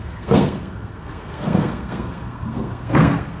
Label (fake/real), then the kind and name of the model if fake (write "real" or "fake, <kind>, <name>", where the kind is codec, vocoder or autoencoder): fake, codec, SNAC